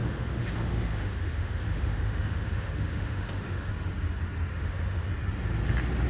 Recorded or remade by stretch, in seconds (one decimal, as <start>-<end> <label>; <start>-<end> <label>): 0.0-3.7 remade; 3.7-4.5 recorded; 4.5-5.1 remade; 5.1-6.1 recorded